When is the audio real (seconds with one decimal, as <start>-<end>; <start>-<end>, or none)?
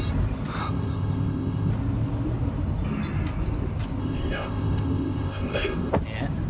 0.0-0.6; 1.7-4.0; 5.9-6.5